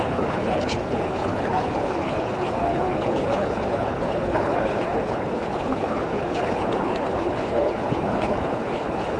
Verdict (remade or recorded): remade